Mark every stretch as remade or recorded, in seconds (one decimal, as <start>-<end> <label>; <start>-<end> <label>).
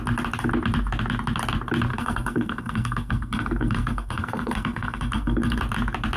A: 0.0-1.9 recorded; 1.9-5.6 remade; 5.6-6.2 recorded